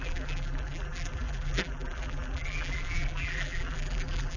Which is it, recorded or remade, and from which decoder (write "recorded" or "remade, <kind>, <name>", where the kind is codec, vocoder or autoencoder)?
remade, vocoder, BigVGAN v2